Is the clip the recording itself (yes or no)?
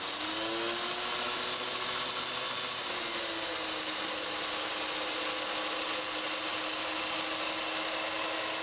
yes